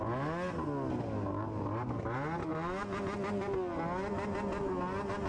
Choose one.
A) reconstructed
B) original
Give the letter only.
B